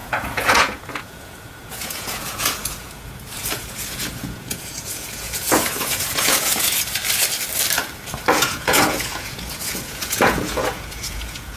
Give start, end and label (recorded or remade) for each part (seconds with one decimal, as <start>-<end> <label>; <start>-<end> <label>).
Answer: 0.0-7.0 remade; 7.0-8.3 recorded; 8.3-11.6 remade